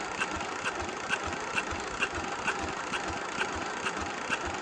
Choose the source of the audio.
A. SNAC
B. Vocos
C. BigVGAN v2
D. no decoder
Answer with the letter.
D